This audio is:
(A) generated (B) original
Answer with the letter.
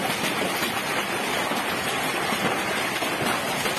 B